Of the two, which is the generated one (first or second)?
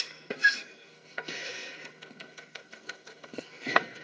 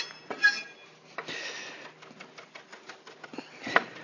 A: first